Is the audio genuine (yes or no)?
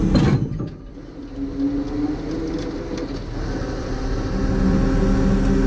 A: yes